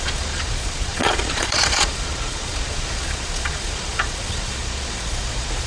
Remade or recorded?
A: remade